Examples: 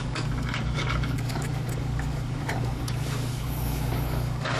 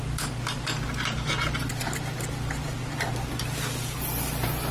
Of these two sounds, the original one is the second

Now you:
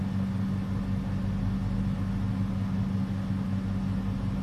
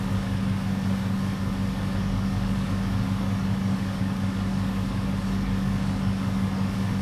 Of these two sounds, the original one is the first